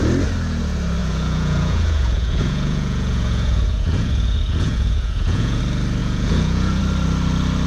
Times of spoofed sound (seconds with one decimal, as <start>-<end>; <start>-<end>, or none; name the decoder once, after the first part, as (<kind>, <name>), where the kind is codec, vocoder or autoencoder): 1.0-5.6 (vocoder, Vocos); 6.0-6.8